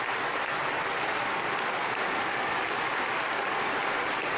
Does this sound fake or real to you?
real